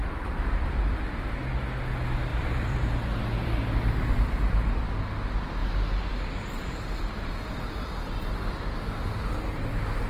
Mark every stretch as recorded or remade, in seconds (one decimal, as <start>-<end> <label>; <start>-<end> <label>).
0.0-1.1 remade; 1.1-2.3 recorded; 2.3-5.0 remade; 5.0-10.1 recorded